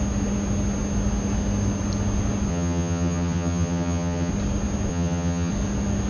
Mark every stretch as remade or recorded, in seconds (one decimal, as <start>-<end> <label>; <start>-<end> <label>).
0.0-2.5 recorded; 2.5-4.3 remade; 4.3-4.9 recorded; 4.9-5.5 remade; 5.5-6.1 recorded